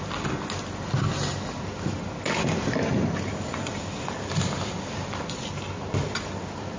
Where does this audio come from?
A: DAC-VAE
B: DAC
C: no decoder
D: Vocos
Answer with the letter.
C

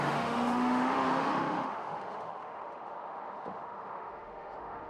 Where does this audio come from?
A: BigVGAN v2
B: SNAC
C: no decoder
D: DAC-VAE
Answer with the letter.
D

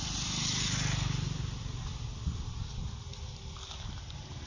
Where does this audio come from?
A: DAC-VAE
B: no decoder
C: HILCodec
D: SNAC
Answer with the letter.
B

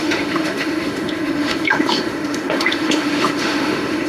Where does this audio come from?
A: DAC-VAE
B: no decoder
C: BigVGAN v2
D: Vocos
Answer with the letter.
A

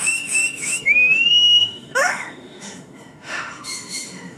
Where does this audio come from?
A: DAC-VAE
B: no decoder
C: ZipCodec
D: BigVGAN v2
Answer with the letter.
A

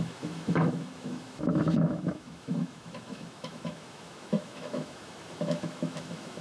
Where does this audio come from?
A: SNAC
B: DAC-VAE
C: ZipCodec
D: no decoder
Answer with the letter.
B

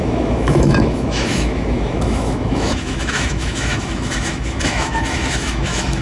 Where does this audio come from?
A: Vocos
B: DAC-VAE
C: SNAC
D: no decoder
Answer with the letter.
B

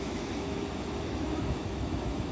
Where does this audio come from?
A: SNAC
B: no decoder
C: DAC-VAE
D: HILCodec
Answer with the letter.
C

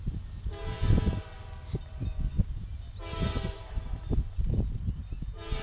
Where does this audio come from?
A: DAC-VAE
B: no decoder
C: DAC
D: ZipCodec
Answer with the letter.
B